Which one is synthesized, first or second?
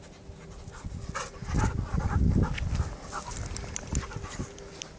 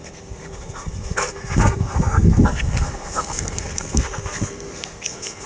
second